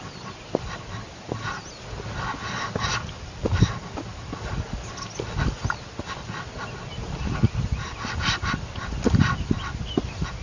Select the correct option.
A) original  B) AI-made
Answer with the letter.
A